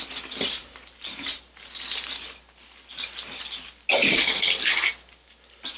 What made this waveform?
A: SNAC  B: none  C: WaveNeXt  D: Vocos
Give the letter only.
B